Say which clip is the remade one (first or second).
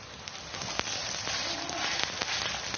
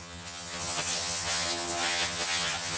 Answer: second